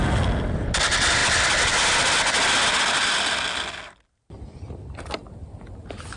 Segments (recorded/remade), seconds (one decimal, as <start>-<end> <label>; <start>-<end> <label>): 0.0-6.2 recorded